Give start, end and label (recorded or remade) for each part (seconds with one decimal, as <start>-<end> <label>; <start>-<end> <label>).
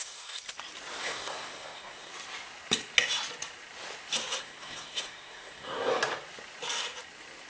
0.0-0.4 remade; 0.4-1.0 recorded; 1.0-2.1 remade; 2.1-4.4 recorded; 4.4-5.9 remade; 5.9-7.5 recorded